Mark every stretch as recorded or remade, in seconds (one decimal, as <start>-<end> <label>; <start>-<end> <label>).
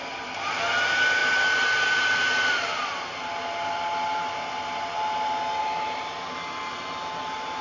0.0-7.6 recorded